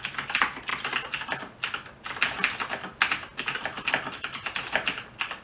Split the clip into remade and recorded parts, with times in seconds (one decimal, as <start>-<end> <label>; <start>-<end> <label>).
0.0-5.4 recorded